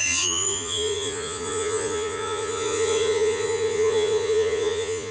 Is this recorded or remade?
remade